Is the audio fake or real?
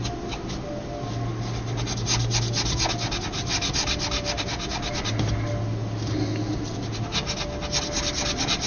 real